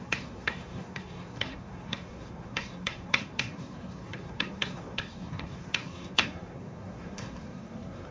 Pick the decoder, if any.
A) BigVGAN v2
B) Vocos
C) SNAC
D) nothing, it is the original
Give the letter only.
C